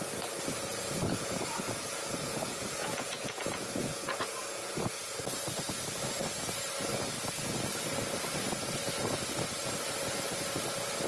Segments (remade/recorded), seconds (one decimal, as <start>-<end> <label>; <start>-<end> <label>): 0.0-0.7 recorded; 0.7-5.2 remade; 5.2-11.1 recorded